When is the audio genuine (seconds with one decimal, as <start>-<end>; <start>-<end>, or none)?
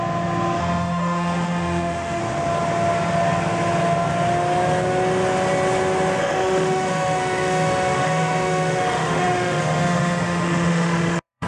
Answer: 0.0-0.6; 2.2-6.2